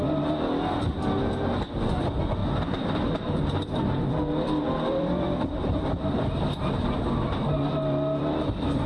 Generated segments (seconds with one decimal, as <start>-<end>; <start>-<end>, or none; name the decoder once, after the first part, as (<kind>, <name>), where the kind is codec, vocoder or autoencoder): 0.0-8.9 (vocoder, BigVGAN v2)